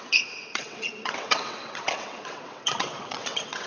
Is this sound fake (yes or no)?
yes